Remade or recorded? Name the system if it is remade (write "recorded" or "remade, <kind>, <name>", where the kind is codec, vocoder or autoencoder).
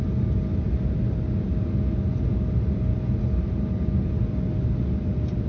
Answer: recorded